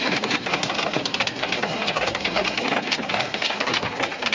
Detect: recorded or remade remade